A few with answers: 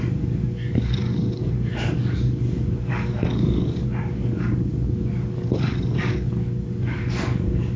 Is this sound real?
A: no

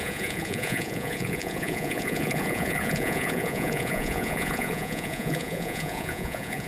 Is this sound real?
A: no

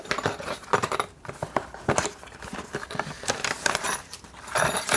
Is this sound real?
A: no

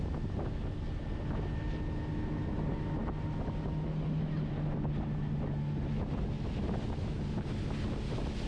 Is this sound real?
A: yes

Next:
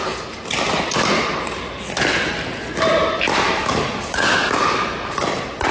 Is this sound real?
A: yes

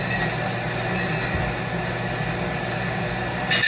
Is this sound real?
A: yes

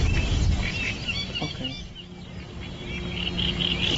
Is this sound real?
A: yes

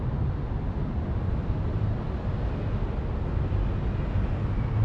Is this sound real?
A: yes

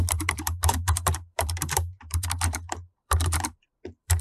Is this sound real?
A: no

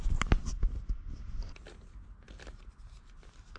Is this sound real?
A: yes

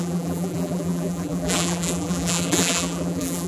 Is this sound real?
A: no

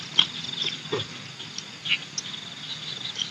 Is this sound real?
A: yes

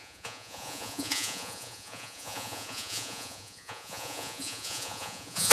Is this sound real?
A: no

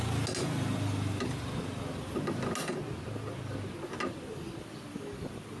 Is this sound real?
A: yes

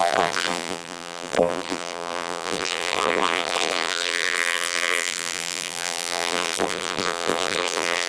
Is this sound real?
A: no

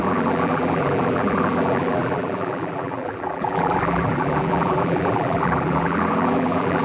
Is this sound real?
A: no